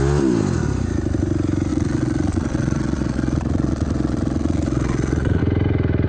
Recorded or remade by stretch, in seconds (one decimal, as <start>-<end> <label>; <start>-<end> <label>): 0.0-1.7 recorded; 1.7-5.4 remade; 5.4-6.1 recorded